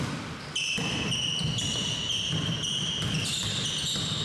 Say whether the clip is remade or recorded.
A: recorded